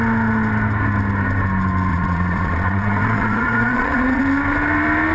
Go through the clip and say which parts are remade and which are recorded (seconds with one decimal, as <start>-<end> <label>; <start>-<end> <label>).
0.0-1.9 recorded; 1.9-4.2 remade; 4.2-5.1 recorded